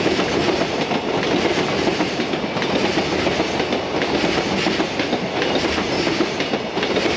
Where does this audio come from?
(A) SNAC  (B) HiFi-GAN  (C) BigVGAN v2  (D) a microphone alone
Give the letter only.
D